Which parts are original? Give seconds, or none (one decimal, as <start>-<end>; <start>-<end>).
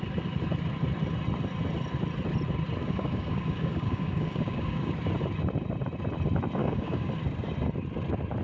0.0-2.8; 4.9-6.6; 7.1-8.4